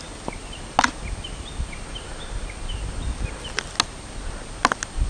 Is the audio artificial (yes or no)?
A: no